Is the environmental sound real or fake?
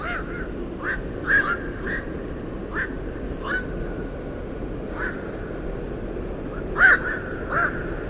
real